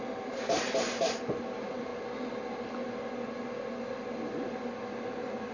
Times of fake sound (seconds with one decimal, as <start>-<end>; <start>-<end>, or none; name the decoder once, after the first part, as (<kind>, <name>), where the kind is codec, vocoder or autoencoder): 0.0-1.9 (vocoder, BigVGAN v2)